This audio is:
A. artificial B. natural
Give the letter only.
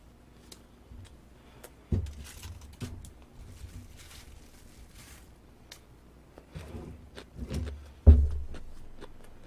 B